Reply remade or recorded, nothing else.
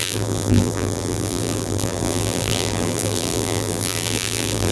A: remade